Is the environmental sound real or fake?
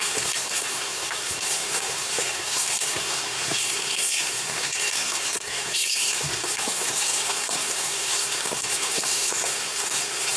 fake